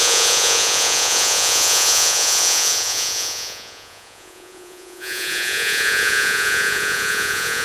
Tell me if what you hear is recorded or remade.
remade